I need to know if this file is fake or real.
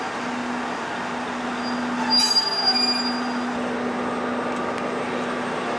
real